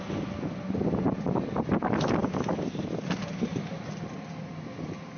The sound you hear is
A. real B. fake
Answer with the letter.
A